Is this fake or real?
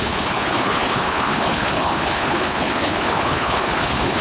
fake